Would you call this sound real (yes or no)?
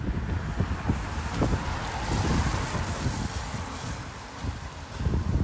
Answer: yes